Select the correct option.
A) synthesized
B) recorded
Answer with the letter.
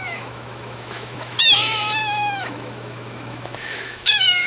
A